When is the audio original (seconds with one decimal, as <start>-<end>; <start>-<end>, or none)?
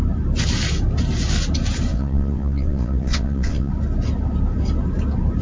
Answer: 0.0-1.9; 3.7-5.4